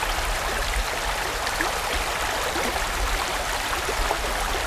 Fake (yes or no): no